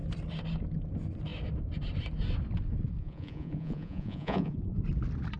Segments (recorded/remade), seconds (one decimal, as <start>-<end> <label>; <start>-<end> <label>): 0.0-3.0 recorded; 3.0-4.8 remade; 4.8-5.4 recorded